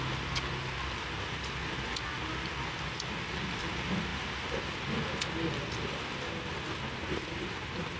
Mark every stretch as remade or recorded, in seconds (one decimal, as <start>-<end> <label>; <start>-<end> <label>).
0.0-8.0 recorded